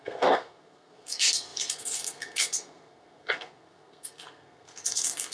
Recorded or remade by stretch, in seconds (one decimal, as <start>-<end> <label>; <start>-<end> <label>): 0.0-5.3 remade